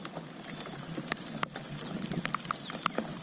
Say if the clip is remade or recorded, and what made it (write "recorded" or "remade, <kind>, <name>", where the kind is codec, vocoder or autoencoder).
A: recorded